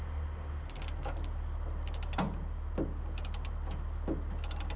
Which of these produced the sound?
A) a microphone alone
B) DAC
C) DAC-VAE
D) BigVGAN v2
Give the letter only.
A